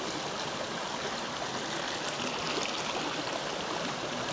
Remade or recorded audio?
recorded